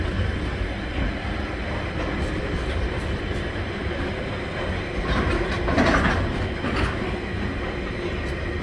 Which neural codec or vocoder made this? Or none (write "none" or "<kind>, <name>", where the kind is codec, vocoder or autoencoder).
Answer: none